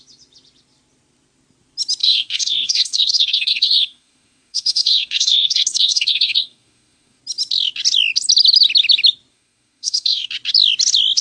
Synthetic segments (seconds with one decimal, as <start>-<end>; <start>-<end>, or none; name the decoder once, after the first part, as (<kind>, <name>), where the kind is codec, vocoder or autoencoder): 2.0-7.2 (codec, SNAC); 9.3-10.3